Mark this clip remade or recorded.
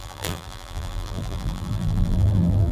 remade